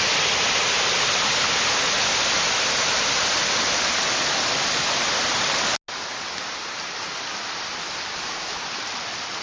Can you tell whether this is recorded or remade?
recorded